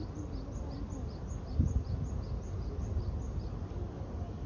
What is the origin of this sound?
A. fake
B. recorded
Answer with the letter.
B